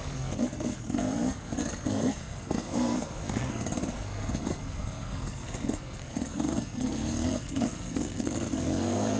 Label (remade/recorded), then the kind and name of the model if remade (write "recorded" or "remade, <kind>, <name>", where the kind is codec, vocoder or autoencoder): remade, codec, SNAC